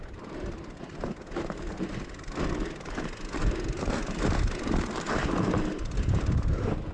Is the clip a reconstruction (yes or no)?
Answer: no